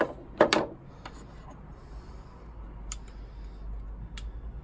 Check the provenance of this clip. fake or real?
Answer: real